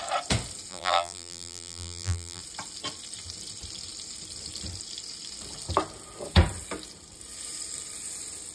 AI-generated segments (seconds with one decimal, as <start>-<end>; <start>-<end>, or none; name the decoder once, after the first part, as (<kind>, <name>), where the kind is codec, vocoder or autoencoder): 0.7-2.4 (vocoder, BigVGAN v2)